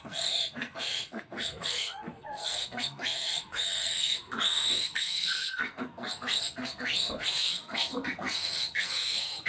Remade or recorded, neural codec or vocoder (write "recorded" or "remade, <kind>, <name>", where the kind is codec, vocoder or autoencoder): remade, codec, SNAC